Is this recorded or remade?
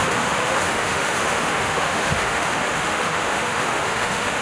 remade